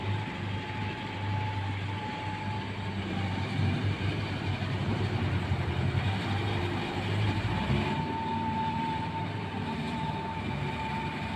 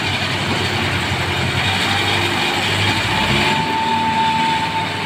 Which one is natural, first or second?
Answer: second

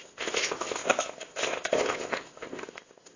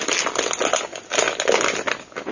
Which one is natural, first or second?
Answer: second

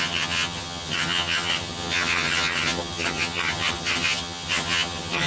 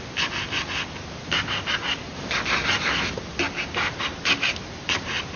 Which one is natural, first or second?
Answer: second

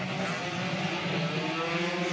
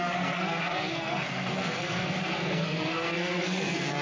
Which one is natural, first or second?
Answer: first